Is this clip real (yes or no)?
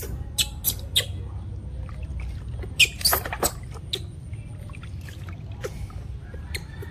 yes